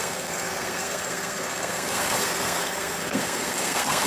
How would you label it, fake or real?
fake